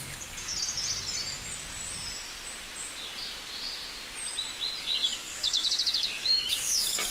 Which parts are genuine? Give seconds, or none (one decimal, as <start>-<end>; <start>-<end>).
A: 0.5-4.8